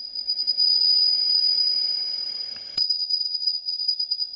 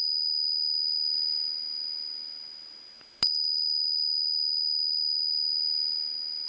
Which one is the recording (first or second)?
second